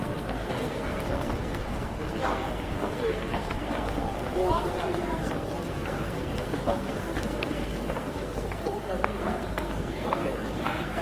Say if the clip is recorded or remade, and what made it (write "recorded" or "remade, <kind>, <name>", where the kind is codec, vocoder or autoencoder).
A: remade, codec, SNAC